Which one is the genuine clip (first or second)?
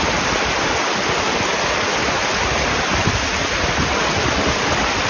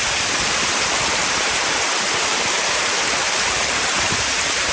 first